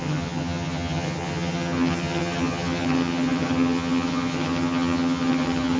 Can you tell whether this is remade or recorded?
remade